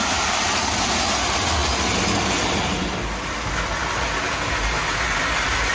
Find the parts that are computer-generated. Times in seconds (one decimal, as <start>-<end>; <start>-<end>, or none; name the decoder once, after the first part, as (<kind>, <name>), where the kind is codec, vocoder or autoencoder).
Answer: none